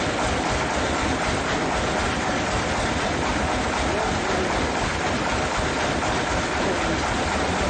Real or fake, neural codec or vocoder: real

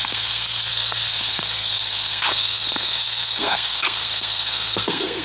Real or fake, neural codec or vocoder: fake, codec, SNAC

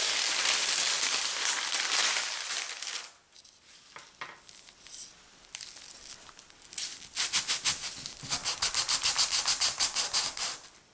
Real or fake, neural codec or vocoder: real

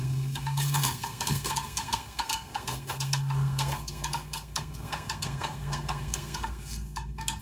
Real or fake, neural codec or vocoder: fake, codec, SNAC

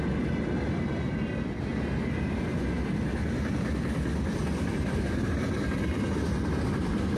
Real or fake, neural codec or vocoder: real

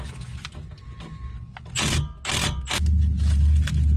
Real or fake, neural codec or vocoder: real